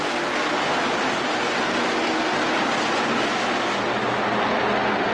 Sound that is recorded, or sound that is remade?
recorded